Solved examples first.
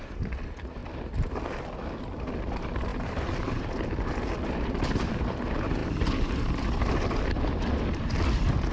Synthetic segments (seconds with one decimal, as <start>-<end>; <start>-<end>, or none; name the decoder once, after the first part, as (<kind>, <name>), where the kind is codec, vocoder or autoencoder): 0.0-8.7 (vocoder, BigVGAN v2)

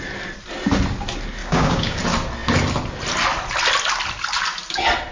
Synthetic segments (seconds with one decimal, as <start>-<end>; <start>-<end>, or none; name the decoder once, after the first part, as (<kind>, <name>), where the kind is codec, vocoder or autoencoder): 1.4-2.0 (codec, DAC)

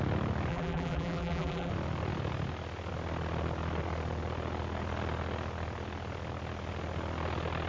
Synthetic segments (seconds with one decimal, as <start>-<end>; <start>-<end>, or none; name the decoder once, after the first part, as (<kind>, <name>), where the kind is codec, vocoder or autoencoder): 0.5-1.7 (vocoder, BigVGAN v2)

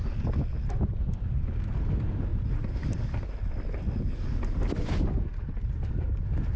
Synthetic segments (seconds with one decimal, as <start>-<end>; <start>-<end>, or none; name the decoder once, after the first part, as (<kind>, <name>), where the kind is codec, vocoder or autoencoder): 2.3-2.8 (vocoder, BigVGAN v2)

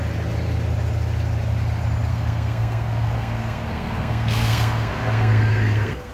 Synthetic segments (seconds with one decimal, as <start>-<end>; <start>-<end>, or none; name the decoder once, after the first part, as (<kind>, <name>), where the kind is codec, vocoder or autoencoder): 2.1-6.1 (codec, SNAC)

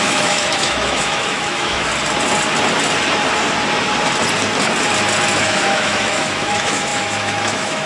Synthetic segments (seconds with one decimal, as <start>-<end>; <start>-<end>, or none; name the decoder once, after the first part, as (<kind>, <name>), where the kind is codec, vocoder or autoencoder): 0.0-1.9 (autoencoder, DAC-VAE); 5.4-7.9

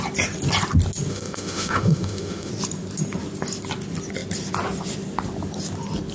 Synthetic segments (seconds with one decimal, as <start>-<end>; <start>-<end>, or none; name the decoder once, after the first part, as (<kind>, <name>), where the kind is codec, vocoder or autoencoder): 1.1-2.5 (autoencoder, DAC-VAE)

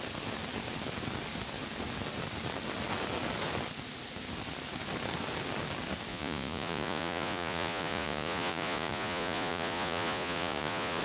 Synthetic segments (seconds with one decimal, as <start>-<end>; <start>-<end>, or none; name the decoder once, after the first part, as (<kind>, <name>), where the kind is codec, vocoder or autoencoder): 6.1-11.0 (vocoder, Vocos)